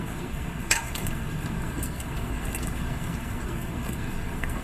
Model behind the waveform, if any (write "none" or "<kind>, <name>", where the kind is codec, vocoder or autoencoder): codec, SNAC